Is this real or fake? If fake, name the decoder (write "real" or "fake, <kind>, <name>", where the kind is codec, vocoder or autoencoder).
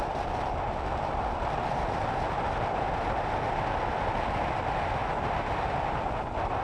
real